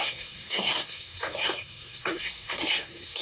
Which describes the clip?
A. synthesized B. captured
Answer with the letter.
A